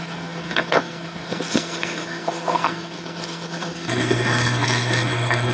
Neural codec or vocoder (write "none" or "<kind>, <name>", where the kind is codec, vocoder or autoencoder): codec, SNAC